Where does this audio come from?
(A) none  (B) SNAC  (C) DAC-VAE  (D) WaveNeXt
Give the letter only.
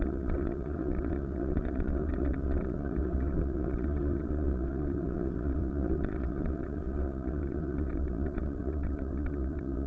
D